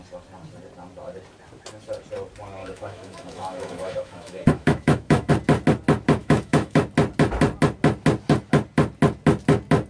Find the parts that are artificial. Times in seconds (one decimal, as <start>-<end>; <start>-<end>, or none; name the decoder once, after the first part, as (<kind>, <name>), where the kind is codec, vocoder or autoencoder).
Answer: 2.6-5.3 (autoencoder, DAC-VAE); 6.2-6.8